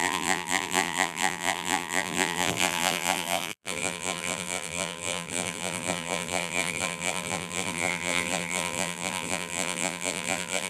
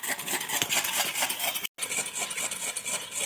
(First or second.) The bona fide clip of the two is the second